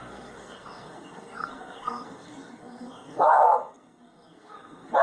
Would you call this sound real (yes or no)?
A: no